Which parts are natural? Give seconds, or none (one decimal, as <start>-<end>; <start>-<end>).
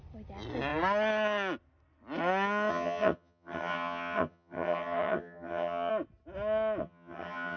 0.0-2.7; 5.9-6.8